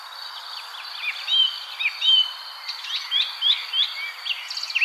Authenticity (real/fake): real